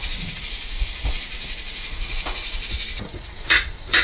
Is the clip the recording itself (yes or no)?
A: no